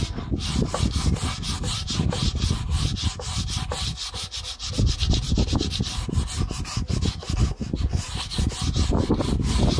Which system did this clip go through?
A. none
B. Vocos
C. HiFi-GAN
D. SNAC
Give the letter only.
A